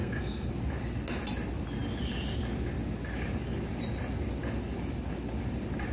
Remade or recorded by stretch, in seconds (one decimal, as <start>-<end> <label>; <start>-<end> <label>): 0.0-0.5 remade; 0.5-5.9 recorded

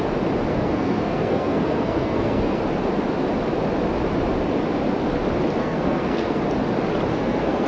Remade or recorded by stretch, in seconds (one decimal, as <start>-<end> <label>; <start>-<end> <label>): 0.0-0.5 recorded; 0.5-2.6 remade; 2.6-5.6 recorded; 5.6-6.4 remade; 6.4-7.1 recorded; 7.1-7.7 remade

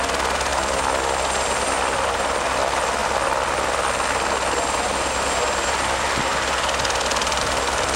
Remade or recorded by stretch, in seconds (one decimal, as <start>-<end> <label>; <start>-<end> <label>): 0.0-8.0 recorded

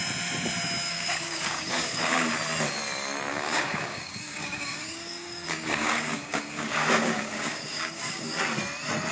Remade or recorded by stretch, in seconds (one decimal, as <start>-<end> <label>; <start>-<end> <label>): 0.0-0.9 recorded; 0.9-2.3 remade; 2.3-3.3 recorded; 3.3-8.4 remade; 8.4-9.1 recorded

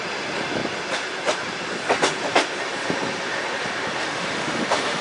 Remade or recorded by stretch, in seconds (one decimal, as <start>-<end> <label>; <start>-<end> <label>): 0.0-4.0 recorded; 4.0-5.0 remade

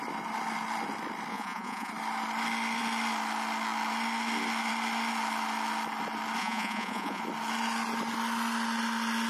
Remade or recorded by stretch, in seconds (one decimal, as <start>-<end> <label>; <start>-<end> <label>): 0.0-1.3 recorded; 1.3-1.9 remade; 1.9-6.4 recorded; 6.4-7.2 remade; 7.2-9.3 recorded

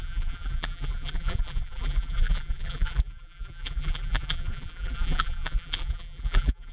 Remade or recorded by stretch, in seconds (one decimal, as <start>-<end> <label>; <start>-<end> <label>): 0.0-6.7 remade

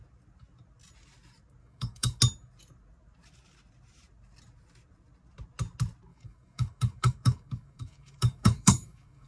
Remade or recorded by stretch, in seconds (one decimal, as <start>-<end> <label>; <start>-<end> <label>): 0.0-1.6 recorded; 1.6-2.2 remade; 2.2-6.1 recorded; 6.1-9.3 remade